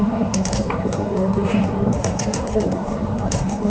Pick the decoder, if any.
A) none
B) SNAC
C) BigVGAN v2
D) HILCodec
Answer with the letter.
B